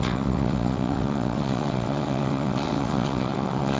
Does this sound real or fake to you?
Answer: fake